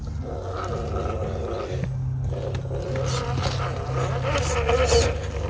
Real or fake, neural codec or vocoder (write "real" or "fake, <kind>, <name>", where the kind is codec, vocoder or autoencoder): real